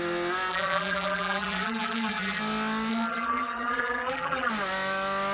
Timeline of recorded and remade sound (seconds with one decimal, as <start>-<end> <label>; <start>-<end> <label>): 0.0-0.5 recorded; 0.5-2.4 remade; 2.4-2.9 recorded; 2.9-4.5 remade; 4.5-5.3 recorded